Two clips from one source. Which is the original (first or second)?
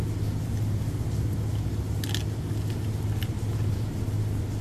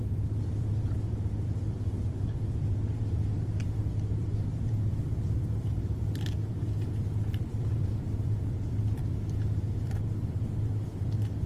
first